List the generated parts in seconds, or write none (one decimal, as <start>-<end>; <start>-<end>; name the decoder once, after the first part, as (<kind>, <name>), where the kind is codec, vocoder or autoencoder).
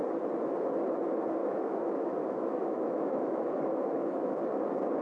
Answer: 1.4-4.4 (autoencoder, DAC-VAE)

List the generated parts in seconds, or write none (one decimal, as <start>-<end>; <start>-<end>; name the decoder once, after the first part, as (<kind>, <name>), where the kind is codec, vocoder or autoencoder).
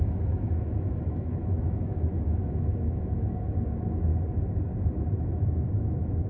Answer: 0.0-4.1 (autoencoder, DAC-VAE); 5.7-6.3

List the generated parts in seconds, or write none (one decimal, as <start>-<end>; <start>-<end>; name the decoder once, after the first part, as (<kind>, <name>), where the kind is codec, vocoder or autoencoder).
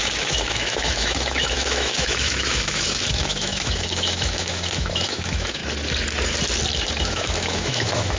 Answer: 0.0-5.6 (autoencoder, DAC-VAE); 7.0-8.2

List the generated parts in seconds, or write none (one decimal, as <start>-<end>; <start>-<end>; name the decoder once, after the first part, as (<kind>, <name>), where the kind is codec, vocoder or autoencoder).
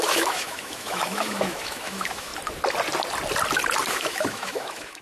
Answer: 0.0-2.3 (autoencoder, DAC-VAE); 3.9-5.0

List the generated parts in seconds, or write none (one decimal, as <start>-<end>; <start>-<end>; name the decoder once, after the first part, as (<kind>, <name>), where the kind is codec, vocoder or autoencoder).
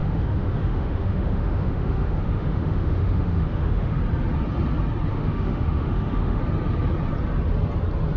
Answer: 0.0-4.0 (autoencoder, DAC-VAE); 5.1-6.4